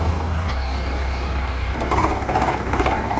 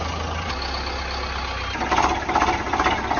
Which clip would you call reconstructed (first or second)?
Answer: first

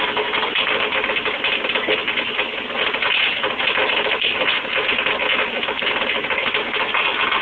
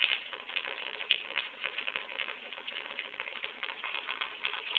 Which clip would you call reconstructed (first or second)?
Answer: second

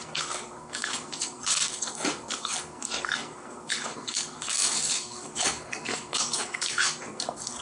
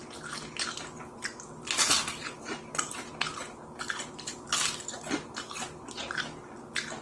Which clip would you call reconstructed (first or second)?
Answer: first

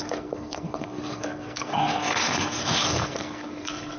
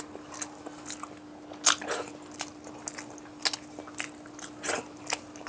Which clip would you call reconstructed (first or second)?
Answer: first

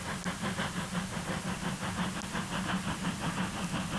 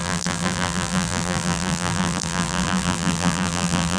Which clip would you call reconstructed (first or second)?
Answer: second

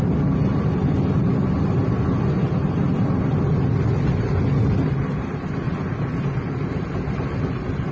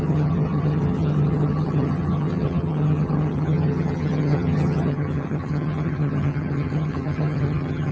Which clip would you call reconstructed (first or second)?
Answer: second